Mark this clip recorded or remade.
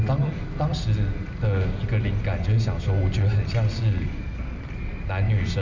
recorded